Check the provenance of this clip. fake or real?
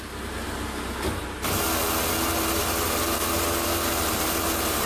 real